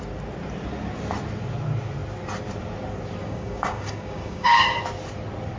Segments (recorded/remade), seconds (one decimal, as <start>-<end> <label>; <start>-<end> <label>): 0.0-3.2 recorded; 3.2-4.8 remade; 4.8-5.6 recorded